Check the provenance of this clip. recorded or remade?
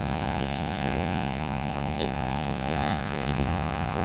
remade